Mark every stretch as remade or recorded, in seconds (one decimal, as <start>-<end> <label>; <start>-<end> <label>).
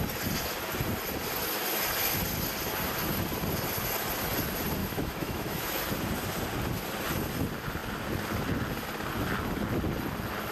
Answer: 0.0-4.8 recorded; 4.8-5.8 remade; 5.8-10.5 recorded